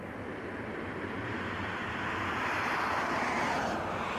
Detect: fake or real real